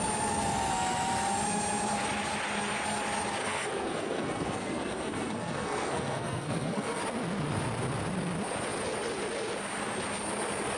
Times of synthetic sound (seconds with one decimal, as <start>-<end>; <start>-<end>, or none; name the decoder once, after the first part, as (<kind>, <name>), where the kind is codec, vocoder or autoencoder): 3.4-7.0 (codec, SNAC)